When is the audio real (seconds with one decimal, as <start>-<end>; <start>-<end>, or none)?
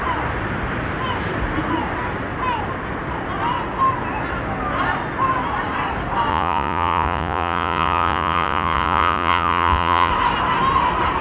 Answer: 0.0-6.3; 10.1-11.2